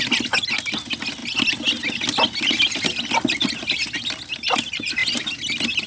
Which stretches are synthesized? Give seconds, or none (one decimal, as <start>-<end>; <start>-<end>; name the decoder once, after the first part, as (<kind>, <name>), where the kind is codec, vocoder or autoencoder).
none